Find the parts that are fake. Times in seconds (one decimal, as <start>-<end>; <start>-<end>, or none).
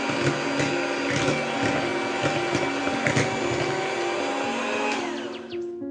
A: none